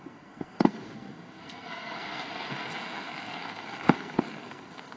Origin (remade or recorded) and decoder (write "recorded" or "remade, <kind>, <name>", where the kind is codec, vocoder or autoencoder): remade, codec, SNAC